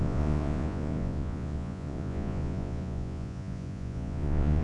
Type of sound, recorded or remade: remade